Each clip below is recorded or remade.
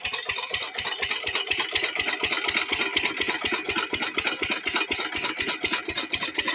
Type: recorded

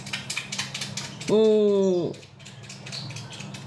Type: recorded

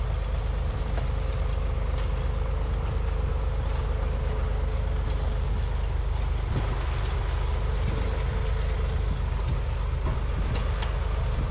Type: recorded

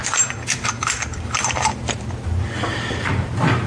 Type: remade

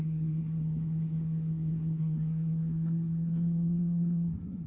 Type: remade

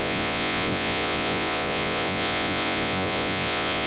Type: remade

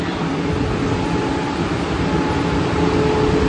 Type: recorded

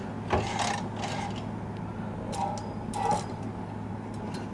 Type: recorded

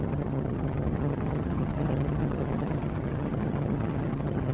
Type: remade